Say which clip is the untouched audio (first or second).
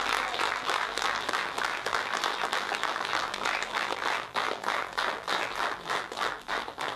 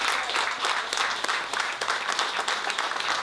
second